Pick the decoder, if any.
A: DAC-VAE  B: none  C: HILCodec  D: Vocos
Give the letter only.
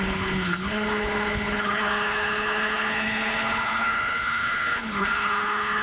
C